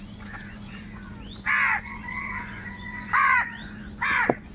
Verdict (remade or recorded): remade